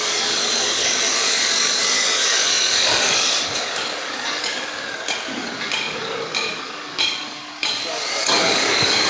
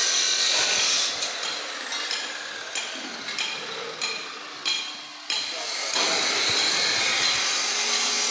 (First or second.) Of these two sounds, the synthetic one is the first